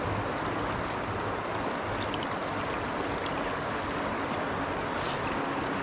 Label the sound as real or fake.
real